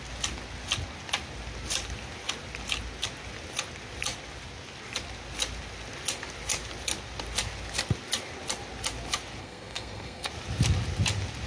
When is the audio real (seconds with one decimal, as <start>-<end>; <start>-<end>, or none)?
0.0-9.4; 10.3-11.5

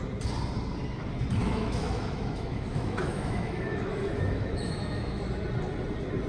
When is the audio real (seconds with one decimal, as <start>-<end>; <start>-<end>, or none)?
0.0-1.4; 5.2-6.3

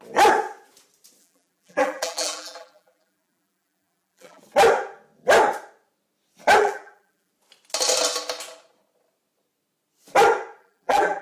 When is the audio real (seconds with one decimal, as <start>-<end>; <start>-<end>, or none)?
0.0-1.2; 4.4-6.6; 7.3-10.6

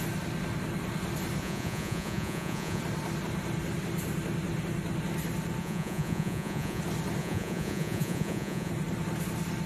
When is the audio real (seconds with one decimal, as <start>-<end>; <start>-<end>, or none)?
0.0-1.4; 2.8-5.6; 6.8-7.2; 8.7-9.7

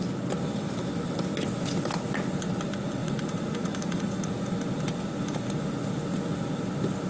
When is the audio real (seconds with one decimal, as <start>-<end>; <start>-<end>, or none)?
0.0-3.0; 4.3-7.1

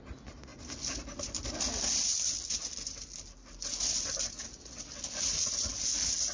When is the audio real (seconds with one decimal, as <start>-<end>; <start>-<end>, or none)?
0.0-6.3

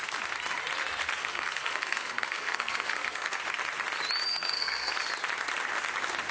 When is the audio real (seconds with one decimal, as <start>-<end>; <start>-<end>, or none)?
0.0-1.2; 3.4-4.3; 4.9-6.3